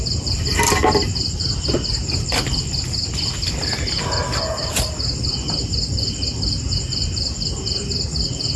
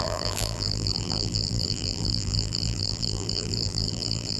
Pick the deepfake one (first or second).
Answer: second